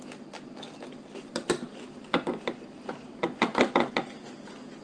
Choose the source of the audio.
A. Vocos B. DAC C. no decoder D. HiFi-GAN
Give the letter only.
C